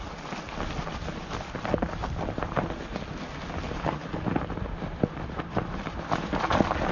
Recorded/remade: recorded